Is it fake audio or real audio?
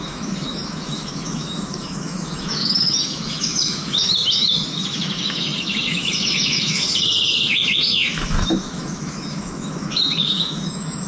fake